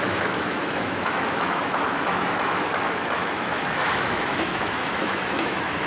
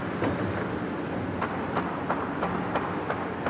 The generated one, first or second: first